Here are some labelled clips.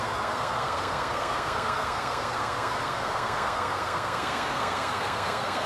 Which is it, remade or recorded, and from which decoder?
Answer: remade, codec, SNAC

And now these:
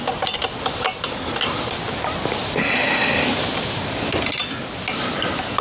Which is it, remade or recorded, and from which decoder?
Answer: recorded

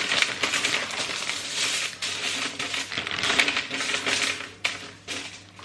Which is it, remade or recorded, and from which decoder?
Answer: recorded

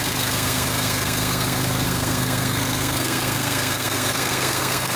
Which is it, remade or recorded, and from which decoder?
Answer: remade, codec, SNAC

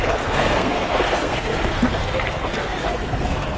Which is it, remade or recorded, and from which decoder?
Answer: remade, codec, SNAC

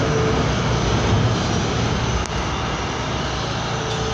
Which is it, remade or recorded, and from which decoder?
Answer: recorded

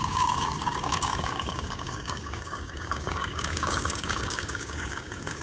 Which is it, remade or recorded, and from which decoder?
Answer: remade, codec, DAC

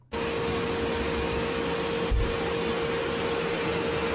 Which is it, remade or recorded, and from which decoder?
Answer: recorded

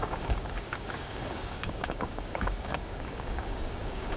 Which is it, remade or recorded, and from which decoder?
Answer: remade, codec, DAC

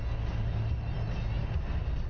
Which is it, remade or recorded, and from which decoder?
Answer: recorded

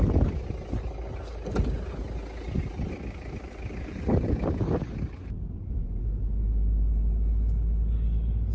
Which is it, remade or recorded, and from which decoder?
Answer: recorded